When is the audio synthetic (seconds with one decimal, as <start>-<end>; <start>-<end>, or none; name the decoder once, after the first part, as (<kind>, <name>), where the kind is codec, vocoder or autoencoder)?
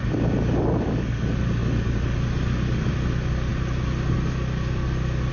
none